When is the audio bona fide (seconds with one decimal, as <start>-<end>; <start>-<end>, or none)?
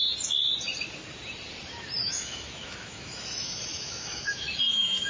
0.0-2.0